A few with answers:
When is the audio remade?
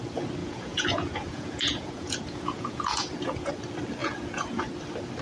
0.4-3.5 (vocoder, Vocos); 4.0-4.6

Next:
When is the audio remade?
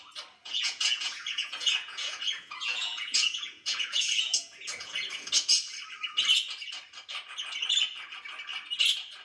0.4-5.3 (vocoder, Vocos)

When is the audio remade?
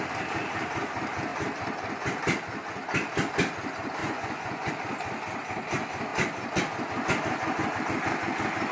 4.0-4.7 (vocoder, Vocos)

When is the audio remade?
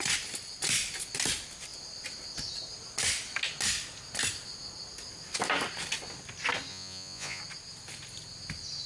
6.7-7.4 (vocoder, Vocos)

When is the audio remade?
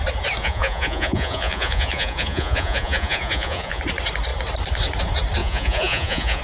0.4-3.8 (vocoder, Vocos); 5.4-6.4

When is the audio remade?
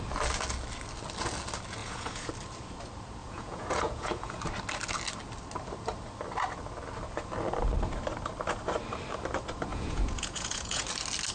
1.8-2.3 (vocoder, Vocos); 3.2-4.4; 9.7-10.8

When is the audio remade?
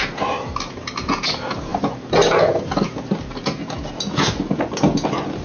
none